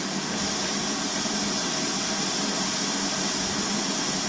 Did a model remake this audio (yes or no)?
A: no